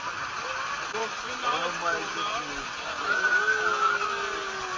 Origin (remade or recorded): recorded